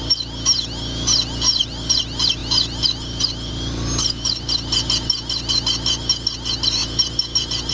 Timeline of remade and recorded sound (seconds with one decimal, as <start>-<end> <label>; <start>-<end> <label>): 0.0-2.4 recorded; 2.4-3.5 remade; 3.5-7.7 recorded